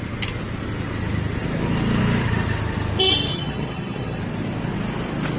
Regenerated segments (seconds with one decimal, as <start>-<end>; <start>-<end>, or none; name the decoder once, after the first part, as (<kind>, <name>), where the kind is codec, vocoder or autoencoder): 3.3-4.2 (vocoder, HiFi-GAN)